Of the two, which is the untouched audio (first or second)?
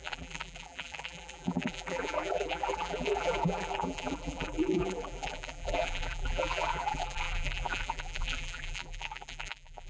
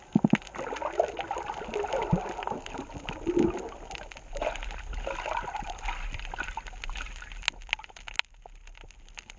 second